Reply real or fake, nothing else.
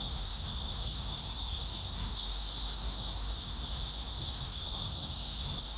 fake